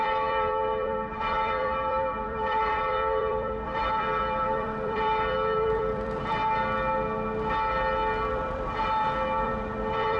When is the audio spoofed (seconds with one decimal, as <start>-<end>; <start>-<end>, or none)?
0.0-6.4; 8.3-10.2